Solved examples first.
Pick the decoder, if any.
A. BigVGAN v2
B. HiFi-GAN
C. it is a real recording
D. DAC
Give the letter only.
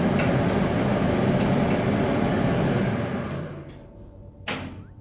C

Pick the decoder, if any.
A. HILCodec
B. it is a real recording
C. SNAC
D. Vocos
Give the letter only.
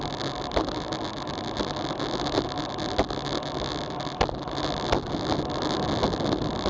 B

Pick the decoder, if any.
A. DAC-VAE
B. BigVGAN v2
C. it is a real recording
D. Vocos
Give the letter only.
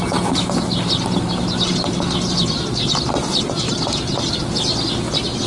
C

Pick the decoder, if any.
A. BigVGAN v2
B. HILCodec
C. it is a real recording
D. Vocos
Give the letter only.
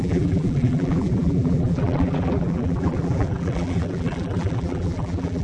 A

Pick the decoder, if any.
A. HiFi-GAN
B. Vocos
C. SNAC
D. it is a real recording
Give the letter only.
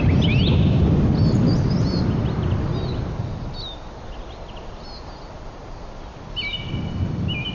D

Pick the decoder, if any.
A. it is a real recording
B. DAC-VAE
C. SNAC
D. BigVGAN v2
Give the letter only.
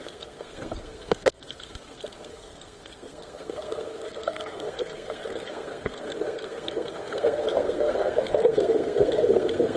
C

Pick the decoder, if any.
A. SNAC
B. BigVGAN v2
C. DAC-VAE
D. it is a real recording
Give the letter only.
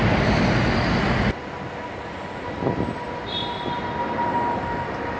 D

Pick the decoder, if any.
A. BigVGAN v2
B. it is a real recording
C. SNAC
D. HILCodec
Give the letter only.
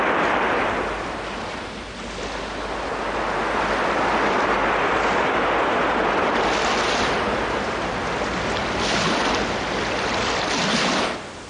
B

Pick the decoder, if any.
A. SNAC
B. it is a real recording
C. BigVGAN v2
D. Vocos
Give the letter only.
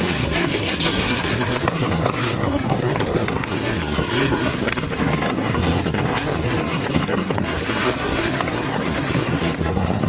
A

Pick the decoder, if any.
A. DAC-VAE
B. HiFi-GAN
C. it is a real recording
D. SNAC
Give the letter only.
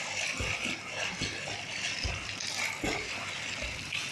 C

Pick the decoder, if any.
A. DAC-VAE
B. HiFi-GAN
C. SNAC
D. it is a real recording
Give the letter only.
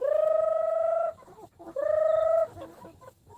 A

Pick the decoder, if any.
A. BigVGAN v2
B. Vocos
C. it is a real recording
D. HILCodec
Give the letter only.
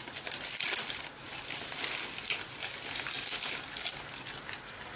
C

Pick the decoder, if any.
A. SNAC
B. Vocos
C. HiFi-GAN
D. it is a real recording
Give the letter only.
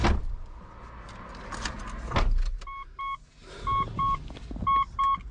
D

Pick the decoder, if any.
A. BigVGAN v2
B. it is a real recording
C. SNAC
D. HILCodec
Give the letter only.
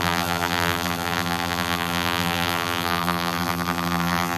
A